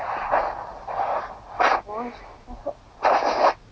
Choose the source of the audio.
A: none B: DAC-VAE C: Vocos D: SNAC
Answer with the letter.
A